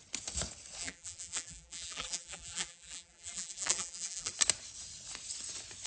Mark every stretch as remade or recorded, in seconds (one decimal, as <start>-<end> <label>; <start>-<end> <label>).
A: 0.0-0.8 recorded; 0.8-4.3 remade; 4.3-5.9 recorded